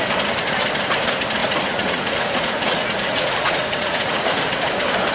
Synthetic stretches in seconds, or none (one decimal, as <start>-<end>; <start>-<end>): 1.4-4.5